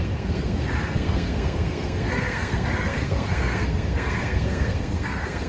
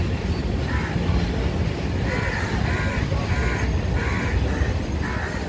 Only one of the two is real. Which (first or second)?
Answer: second